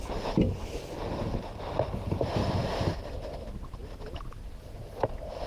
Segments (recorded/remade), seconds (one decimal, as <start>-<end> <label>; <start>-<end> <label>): 0.0-5.5 recorded